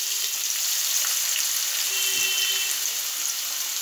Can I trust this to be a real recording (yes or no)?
yes